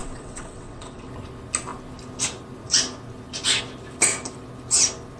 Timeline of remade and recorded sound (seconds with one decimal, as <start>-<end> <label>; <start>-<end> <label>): 0.0-1.1 remade; 1.1-5.2 recorded